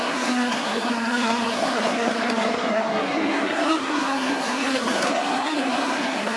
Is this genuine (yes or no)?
no